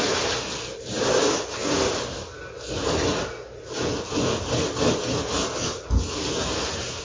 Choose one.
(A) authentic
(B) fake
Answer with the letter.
A